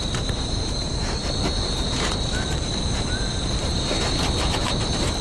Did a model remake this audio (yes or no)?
yes